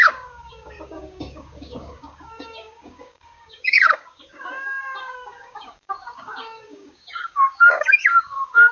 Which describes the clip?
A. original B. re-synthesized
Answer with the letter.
B